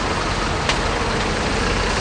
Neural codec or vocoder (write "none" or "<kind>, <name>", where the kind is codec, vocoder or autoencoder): none